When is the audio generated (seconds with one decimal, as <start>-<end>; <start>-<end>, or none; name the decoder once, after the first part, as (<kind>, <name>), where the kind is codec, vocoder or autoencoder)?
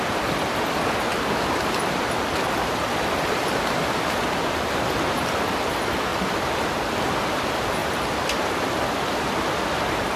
1.1-3.5 (vocoder, BigVGAN v2); 6.1-7.1